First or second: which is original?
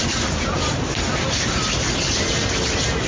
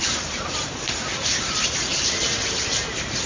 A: first